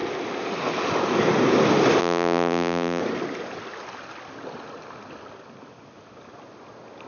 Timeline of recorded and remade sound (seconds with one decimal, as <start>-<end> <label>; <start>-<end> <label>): 0.0-2.0 recorded; 2.0-3.0 remade; 3.0-7.1 recorded